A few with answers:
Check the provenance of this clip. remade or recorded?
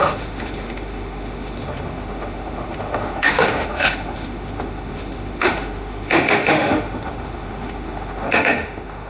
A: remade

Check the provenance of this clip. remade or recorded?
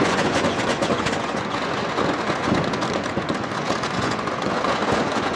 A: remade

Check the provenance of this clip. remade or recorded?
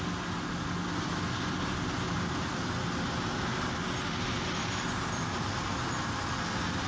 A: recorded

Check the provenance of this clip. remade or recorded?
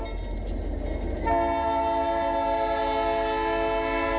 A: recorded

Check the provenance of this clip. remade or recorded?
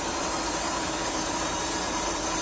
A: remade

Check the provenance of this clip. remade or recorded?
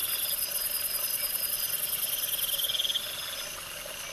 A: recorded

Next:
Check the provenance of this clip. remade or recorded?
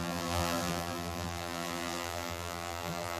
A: remade